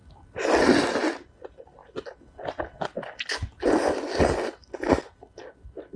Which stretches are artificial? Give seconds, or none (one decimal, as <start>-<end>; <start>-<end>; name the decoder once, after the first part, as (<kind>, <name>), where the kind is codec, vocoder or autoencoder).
none